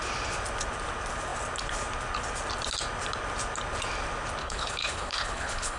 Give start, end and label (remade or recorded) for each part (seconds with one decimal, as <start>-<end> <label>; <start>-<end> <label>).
0.0-4.4 recorded; 4.4-5.8 remade

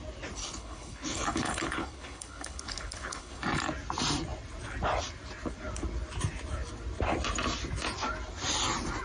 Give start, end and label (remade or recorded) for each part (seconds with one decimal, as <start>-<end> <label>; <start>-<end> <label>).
0.0-0.4 recorded; 0.4-3.4 remade; 3.4-9.0 recorded

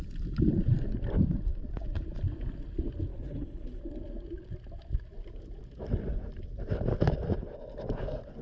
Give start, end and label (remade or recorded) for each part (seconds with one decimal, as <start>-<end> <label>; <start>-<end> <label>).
0.0-3.1 recorded; 3.1-3.8 remade; 3.8-8.4 recorded

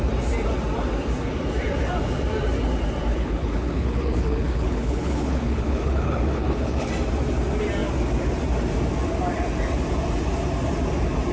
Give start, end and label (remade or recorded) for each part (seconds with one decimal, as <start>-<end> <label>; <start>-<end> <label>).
0.0-3.1 recorded; 3.1-6.9 remade; 6.9-11.3 recorded

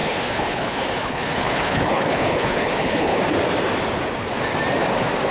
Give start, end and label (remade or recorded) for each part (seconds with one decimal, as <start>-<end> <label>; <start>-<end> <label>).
0.0-3.2 remade; 3.2-5.3 recorded